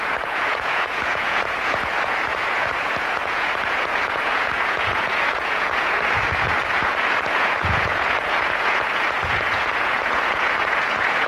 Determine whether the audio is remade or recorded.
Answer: remade